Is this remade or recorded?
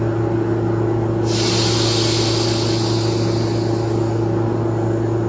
recorded